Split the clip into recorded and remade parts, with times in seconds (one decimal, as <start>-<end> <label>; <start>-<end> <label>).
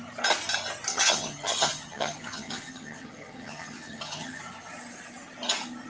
0.0-0.9 recorded; 0.9-4.4 remade; 4.4-5.9 recorded